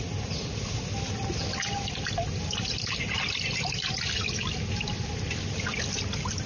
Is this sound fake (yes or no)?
no